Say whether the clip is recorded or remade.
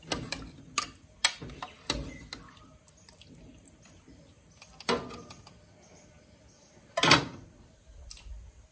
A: recorded